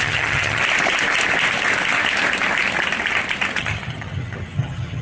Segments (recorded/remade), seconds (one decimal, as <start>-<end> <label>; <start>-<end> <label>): 0.0-0.6 remade; 0.6-3.6 recorded; 3.6-5.0 remade